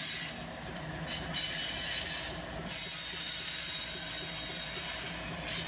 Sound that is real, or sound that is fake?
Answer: real